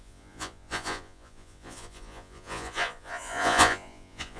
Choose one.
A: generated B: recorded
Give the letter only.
A